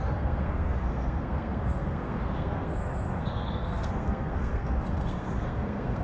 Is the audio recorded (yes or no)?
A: no